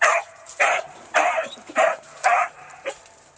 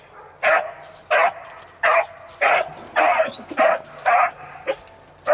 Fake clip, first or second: first